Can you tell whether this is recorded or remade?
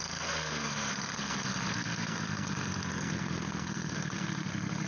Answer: remade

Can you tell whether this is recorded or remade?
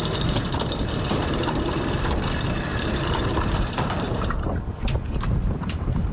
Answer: remade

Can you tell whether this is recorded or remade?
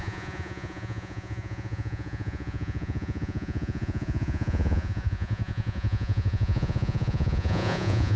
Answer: remade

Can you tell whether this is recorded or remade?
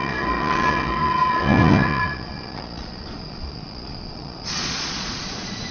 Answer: remade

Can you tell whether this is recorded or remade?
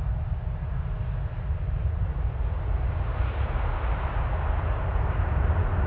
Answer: recorded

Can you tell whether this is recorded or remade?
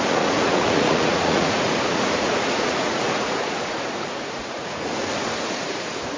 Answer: remade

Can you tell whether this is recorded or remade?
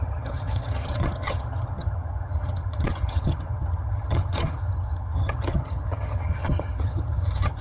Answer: remade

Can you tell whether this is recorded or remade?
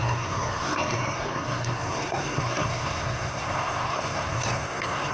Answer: remade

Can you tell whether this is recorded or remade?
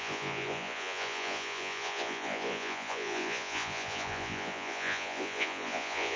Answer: remade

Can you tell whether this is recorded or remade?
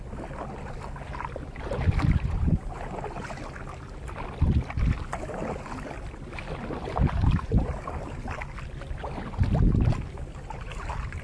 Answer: recorded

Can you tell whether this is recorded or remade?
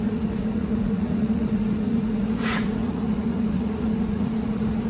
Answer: remade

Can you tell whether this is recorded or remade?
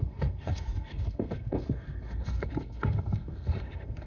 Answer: remade